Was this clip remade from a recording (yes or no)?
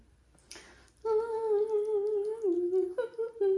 no